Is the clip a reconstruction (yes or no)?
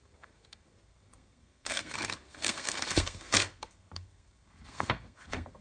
yes